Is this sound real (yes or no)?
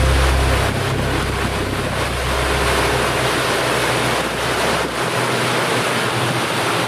yes